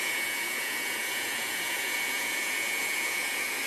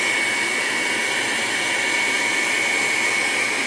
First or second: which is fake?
first